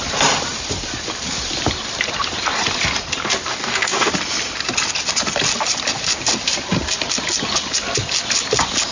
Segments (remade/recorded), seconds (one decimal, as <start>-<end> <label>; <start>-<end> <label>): 0.0-3.5 recorded; 3.5-4.1 remade; 4.1-8.9 recorded